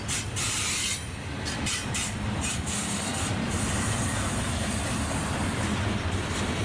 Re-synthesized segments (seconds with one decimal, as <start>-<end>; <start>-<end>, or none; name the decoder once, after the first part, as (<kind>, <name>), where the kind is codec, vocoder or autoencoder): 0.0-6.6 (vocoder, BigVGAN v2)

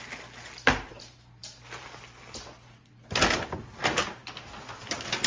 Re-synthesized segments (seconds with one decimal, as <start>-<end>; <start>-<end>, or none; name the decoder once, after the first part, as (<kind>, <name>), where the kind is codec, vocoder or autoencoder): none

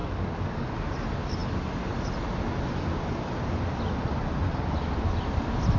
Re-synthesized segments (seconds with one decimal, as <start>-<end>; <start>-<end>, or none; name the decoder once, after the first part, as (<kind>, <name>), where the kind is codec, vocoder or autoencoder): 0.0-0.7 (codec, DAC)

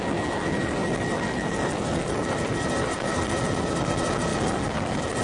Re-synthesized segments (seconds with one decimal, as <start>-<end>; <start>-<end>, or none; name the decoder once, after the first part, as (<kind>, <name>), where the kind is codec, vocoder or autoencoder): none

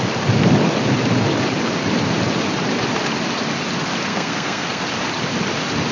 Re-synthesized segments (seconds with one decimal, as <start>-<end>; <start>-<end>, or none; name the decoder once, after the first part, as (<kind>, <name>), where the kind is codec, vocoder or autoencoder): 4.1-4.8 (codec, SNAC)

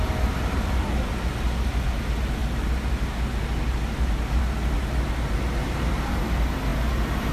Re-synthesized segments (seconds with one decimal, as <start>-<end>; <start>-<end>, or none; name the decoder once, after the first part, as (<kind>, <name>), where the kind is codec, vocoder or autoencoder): 2.4-4.4 (vocoder, BigVGAN v2); 5.6-6.2

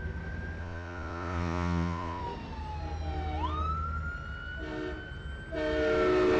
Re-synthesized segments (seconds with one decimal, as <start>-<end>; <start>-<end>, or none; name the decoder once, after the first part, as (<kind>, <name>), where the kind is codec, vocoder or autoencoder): 0.6-2.2 (vocoder, Vocos)